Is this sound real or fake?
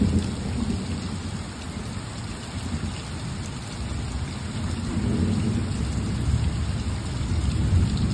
real